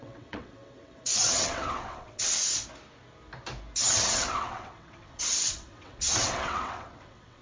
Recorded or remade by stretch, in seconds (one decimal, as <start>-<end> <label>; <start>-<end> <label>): 0.0-2.4 remade; 2.4-3.8 recorded; 3.8-7.4 remade